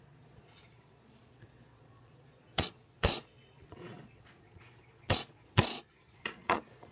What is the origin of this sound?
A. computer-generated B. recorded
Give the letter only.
A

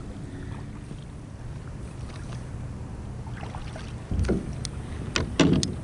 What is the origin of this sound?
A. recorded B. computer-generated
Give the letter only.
A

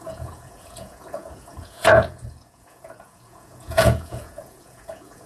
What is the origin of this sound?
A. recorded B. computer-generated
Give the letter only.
B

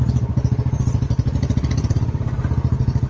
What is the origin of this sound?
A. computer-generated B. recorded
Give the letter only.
B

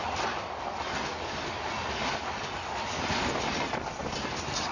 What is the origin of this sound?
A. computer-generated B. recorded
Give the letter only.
B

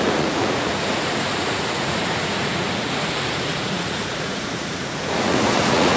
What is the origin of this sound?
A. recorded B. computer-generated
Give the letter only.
B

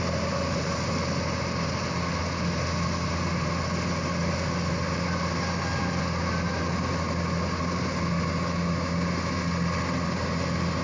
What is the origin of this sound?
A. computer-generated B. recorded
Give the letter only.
B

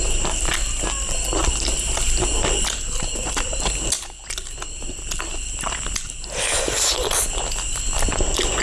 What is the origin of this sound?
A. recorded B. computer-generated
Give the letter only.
A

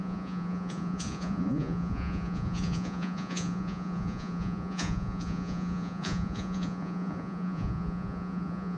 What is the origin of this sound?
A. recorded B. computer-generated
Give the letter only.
B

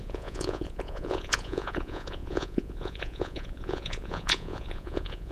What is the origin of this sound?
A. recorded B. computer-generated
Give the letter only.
B